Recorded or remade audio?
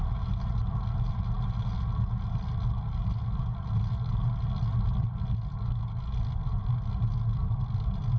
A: recorded